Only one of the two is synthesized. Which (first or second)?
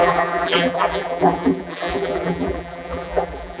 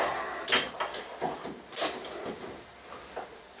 first